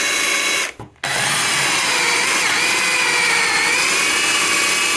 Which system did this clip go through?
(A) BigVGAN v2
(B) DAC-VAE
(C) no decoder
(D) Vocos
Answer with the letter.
C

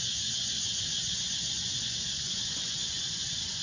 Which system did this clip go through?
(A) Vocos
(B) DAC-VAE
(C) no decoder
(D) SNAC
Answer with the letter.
A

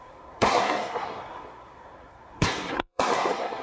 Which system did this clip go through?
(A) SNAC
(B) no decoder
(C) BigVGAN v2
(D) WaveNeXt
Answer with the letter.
A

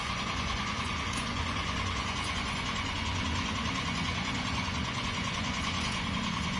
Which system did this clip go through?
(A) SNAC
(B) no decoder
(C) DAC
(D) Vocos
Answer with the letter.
D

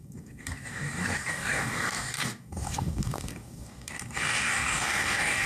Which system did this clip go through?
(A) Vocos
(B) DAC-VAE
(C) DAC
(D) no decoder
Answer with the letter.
C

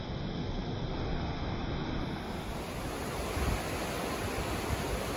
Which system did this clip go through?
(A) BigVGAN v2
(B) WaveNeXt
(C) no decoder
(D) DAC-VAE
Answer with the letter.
C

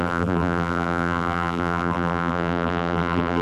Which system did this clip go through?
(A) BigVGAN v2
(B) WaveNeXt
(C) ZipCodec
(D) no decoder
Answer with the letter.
A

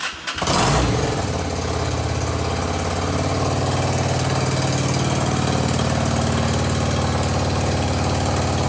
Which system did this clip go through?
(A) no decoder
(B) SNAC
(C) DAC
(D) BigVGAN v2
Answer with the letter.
A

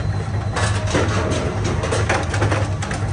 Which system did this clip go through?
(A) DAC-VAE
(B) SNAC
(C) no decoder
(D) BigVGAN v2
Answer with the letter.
C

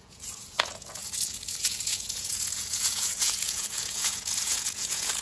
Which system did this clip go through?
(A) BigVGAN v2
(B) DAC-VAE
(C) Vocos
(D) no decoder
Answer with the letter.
C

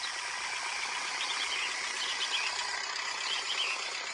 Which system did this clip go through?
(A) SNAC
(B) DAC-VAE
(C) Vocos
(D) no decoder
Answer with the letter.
D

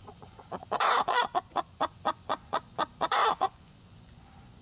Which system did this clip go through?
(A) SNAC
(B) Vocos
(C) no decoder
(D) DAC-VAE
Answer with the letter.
B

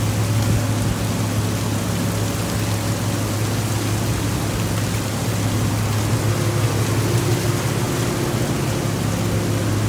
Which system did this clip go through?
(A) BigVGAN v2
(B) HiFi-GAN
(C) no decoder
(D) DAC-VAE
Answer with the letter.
C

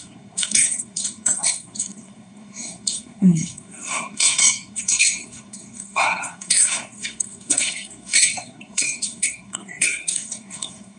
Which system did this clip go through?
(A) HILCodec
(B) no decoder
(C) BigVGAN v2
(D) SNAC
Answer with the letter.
D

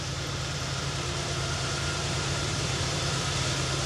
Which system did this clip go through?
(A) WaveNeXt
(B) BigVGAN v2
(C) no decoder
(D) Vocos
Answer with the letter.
B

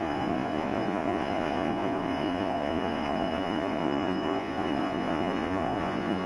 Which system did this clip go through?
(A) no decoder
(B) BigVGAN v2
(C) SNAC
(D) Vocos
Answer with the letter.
D